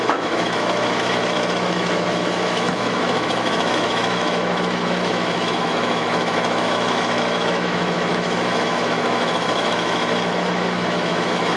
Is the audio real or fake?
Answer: fake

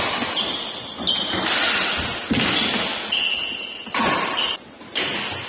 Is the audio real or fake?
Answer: real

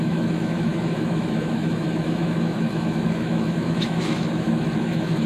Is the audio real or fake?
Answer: fake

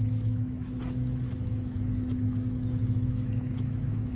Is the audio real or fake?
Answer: fake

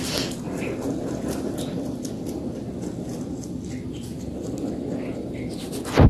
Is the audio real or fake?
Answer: real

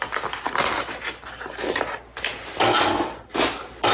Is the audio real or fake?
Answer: real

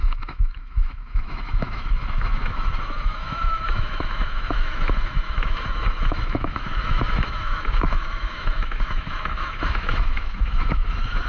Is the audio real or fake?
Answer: fake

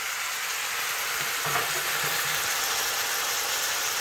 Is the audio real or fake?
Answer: real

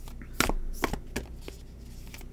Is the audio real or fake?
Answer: real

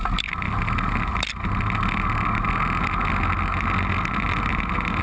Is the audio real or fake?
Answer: real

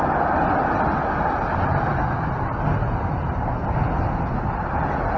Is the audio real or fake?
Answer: real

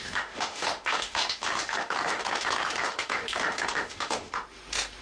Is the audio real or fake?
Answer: fake